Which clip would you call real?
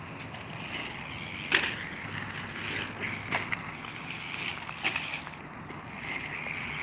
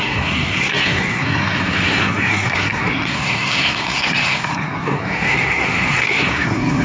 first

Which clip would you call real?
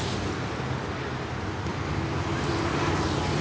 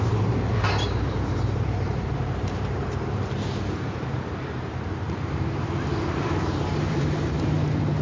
first